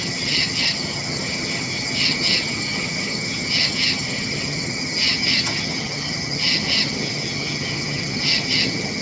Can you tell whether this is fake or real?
fake